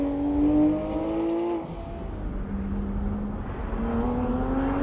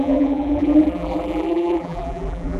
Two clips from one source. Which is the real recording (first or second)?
first